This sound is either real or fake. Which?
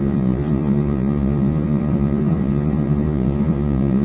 fake